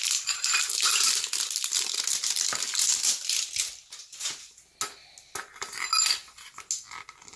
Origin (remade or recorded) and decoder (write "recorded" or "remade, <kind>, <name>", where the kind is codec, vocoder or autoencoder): recorded